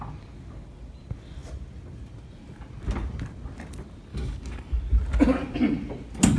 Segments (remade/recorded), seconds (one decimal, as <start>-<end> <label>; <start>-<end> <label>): 0.0-4.1 recorded; 4.1-4.8 remade; 4.8-6.4 recorded